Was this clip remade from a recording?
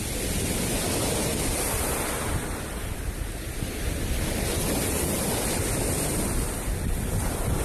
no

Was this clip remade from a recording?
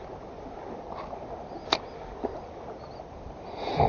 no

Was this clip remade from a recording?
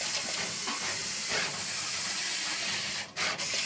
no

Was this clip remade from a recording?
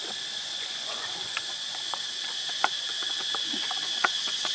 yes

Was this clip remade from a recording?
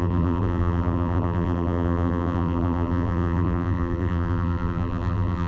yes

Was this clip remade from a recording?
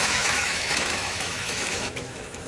yes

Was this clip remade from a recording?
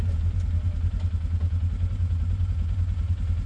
no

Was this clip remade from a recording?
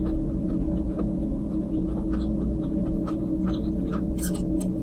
no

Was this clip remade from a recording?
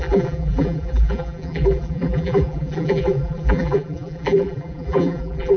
yes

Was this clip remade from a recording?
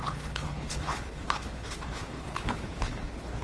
yes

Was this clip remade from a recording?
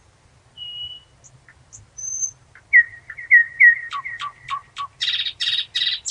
no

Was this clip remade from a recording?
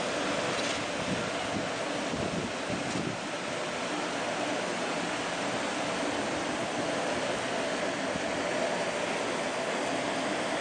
no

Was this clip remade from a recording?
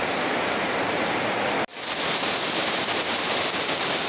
no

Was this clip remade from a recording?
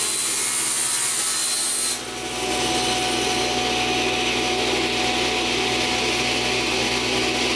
no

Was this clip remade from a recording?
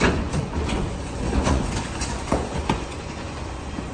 yes